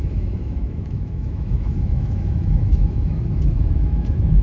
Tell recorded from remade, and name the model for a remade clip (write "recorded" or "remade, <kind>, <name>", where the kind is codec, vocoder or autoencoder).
remade, autoencoder, DAC-VAE